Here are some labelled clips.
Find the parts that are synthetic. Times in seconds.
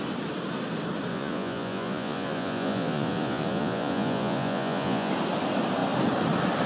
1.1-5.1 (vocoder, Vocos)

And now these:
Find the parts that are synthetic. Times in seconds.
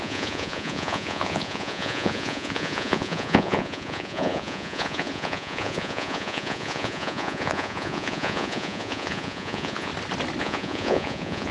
0.0-9.9 (vocoder, Vocos); 10.4-11.5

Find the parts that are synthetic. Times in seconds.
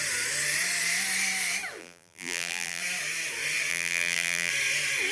1.8-2.8 (vocoder, BigVGAN v2); 3.7-4.5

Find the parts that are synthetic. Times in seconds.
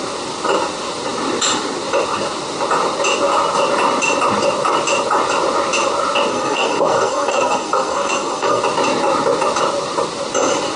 6.3-8.6 (codec, SNAC)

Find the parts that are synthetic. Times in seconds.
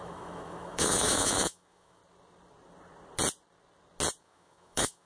0.0-2.0 (autoencoder, DAC-VAE); 4.2-5.1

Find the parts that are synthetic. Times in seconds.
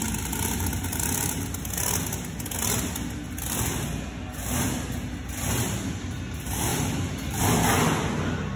none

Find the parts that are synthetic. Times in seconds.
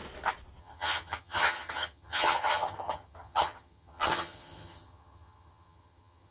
0.6-6.3 (vocoder, HiFi-GAN)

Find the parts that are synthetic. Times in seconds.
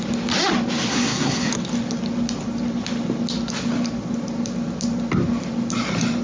0.9-1.5 (codec, SNAC)